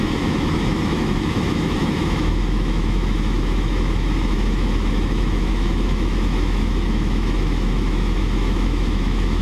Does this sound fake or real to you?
fake